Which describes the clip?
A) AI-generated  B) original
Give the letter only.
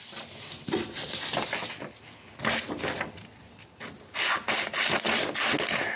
B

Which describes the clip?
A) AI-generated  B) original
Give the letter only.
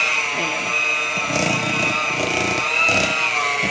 B